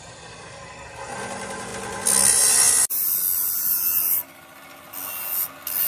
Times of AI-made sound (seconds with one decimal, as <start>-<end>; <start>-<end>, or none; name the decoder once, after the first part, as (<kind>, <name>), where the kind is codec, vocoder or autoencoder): none